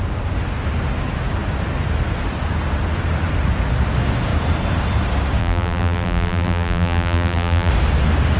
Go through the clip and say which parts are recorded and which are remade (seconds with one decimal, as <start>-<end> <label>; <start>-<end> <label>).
0.0-5.4 recorded; 5.4-7.7 remade; 7.7-8.4 recorded